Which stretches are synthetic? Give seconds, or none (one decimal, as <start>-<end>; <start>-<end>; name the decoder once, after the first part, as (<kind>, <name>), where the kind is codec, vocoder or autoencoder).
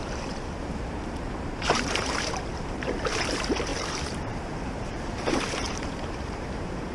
0.0-6.9 (vocoder, BigVGAN v2)